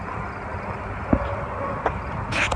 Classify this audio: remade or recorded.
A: recorded